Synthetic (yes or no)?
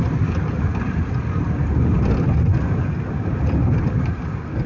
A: no